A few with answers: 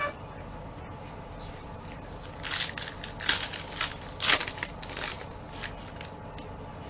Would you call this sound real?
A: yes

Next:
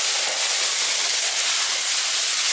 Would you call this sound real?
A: yes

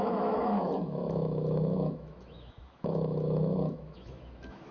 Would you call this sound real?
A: no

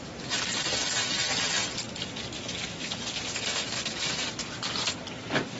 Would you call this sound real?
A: yes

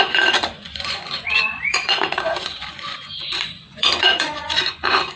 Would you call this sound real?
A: no